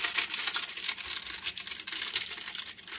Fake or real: real